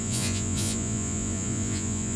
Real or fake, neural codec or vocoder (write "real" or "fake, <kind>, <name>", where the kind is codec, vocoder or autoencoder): fake, vocoder, Vocos